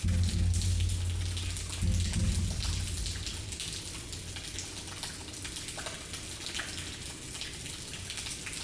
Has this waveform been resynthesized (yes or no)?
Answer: no